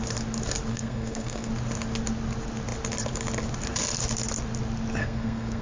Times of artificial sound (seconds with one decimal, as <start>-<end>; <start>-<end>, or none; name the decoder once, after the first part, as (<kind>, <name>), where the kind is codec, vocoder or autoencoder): 0.7-1.5 (codec, SNAC); 5.0-5.6